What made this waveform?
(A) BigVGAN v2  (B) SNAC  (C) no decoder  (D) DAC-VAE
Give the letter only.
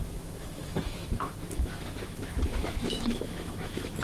D